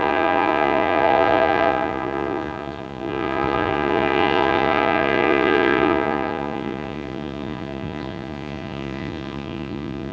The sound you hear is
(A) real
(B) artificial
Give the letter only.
B